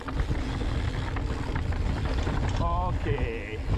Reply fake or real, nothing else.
real